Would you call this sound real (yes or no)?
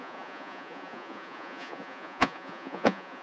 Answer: no